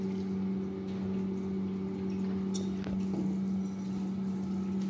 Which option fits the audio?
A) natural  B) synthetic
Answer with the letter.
A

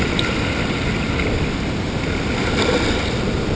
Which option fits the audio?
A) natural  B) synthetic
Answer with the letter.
A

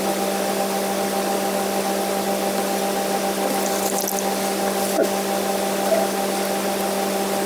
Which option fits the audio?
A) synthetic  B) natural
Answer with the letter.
B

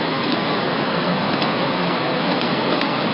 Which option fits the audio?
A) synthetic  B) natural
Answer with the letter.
A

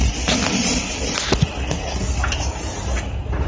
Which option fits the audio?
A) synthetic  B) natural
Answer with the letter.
B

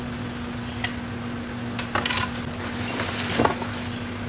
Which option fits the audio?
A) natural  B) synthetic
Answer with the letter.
A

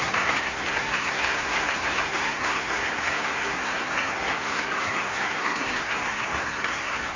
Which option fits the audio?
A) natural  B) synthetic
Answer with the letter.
B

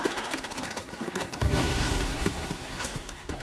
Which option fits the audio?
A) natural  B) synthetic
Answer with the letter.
B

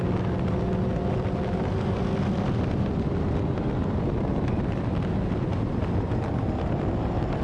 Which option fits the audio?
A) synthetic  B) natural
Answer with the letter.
B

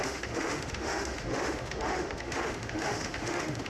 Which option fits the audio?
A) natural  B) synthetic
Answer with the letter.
B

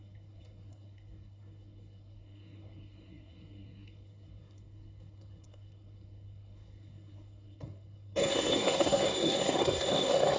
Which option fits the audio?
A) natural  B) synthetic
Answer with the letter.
B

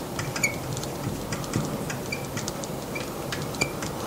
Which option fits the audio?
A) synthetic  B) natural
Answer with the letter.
A